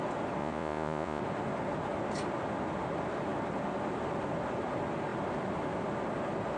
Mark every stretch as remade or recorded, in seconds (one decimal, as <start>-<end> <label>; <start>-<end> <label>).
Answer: 0.0-0.4 recorded; 0.4-1.2 remade; 1.2-6.6 recorded